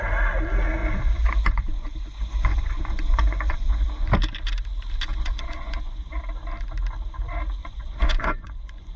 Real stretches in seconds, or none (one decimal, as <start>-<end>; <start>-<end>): 0.0-0.8; 4.1-5.1; 6.2-7.6